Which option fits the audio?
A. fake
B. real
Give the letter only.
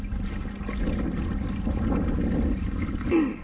B